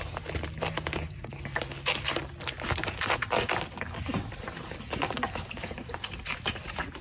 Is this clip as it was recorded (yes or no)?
yes